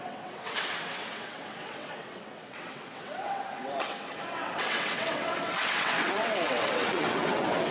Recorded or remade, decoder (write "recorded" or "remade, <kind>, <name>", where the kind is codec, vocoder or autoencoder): remade, vocoder, WaveNeXt